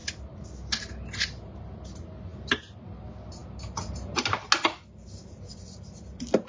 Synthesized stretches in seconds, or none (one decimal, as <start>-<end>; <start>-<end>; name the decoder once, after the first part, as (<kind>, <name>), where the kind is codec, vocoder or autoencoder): none